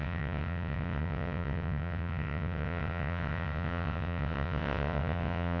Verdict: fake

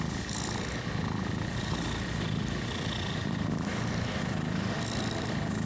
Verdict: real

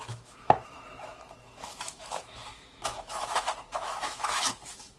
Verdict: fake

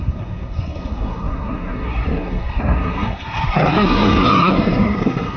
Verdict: fake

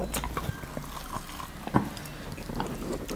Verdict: real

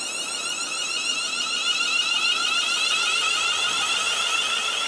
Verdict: real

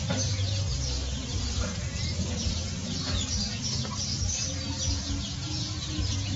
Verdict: real